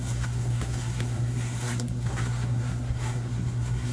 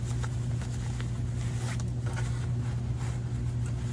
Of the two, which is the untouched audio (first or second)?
second